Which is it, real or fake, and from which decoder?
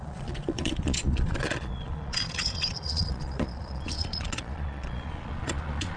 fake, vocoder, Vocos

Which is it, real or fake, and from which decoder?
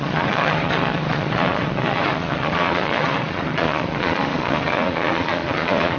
fake, vocoder, Vocos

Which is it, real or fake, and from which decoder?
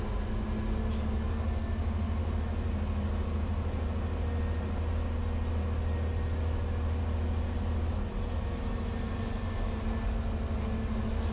real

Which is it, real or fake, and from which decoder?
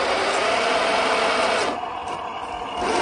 real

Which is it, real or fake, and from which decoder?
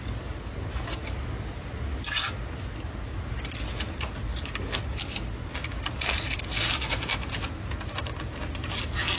real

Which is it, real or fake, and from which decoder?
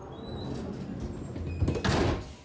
real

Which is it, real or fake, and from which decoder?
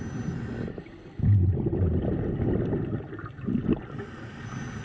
real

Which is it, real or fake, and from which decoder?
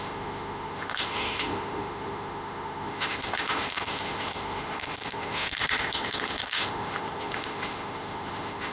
fake, autoencoder, DAC-VAE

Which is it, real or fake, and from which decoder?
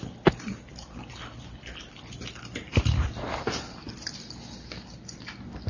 real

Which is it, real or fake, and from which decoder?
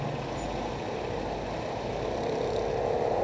real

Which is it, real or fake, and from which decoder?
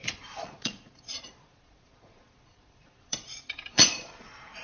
fake, vocoder, Vocos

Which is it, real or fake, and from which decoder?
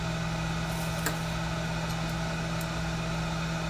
real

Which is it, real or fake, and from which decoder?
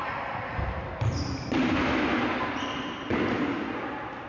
real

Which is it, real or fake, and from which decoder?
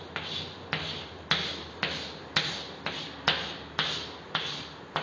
real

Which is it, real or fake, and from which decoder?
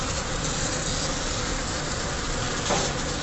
fake, vocoder, BigVGAN v2